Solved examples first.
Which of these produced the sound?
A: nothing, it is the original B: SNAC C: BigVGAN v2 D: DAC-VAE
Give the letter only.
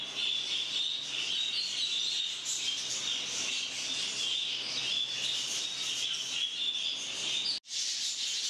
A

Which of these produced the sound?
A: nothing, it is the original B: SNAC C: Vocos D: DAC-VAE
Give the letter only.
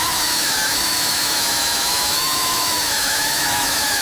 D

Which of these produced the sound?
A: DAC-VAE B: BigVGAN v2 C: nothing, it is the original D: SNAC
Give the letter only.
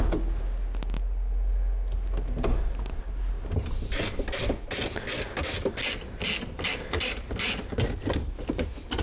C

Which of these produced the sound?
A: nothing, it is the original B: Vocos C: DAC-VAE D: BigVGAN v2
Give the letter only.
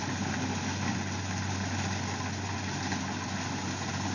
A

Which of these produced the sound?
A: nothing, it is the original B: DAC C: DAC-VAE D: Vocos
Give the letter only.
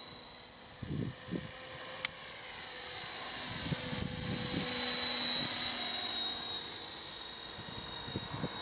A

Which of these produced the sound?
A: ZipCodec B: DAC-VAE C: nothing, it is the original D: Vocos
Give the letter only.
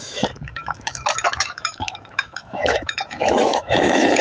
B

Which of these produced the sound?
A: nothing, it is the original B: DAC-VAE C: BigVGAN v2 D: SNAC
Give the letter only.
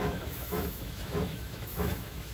B